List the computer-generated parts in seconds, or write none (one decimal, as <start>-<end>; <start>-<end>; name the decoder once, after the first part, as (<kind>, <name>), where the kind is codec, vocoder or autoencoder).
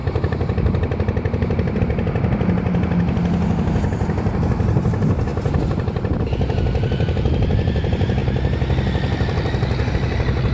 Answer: none